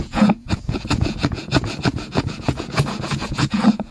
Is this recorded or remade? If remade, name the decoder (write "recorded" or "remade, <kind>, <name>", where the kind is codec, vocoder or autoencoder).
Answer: remade, vocoder, Vocos